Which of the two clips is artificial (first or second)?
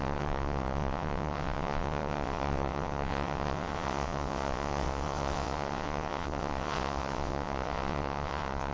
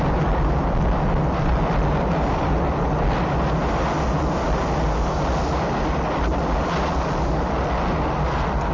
first